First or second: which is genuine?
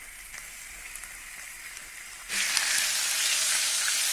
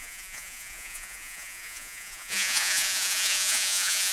first